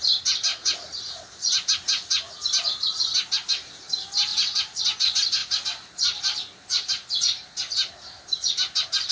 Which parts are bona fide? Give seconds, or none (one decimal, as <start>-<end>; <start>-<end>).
0.0-0.5; 1.2-4.3; 4.8-9.1